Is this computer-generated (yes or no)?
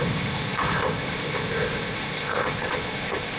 yes